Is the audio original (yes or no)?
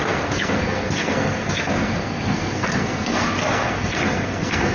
no